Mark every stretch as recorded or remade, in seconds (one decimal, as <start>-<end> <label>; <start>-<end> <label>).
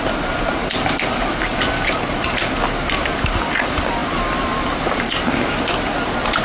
0.0-6.4 recorded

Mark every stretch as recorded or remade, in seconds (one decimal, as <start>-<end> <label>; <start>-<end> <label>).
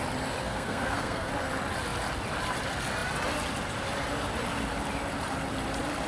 0.0-0.4 recorded; 0.4-1.3 remade; 1.3-6.1 recorded